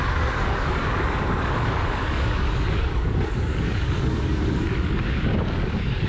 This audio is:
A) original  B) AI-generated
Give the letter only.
B